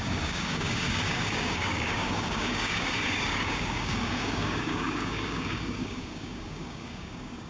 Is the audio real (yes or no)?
no